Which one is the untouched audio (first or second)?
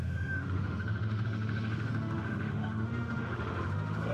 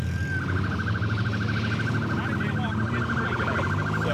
second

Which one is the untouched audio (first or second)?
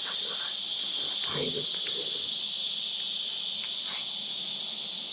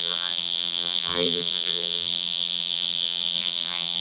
first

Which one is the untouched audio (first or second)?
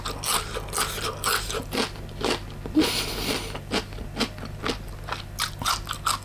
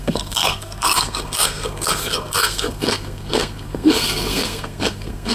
first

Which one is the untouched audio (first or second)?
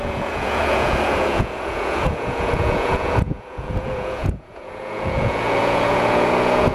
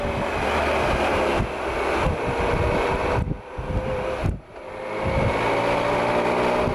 second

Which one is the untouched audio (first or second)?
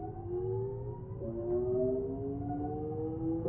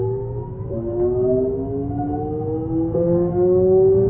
first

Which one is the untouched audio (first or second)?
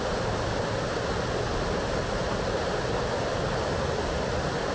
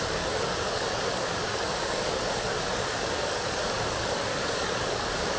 first